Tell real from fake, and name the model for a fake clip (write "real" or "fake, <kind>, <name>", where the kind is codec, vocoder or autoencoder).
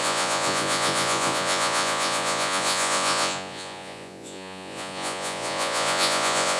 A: fake, vocoder, Vocos